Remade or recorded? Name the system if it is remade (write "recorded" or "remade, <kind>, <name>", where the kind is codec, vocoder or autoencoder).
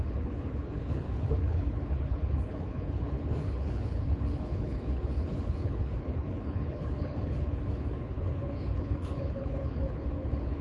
remade, codec, HILCodec